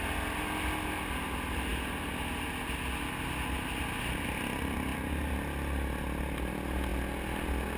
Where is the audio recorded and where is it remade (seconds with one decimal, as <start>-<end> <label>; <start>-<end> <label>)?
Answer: 0.0-7.8 recorded